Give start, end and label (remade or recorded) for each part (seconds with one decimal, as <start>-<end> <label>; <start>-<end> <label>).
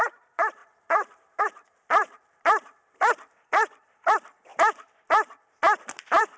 0.0-4.5 remade; 4.5-5.8 recorded; 5.8-6.4 remade